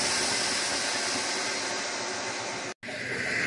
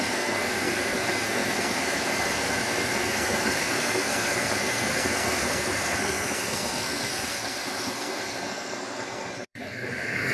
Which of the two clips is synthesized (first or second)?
second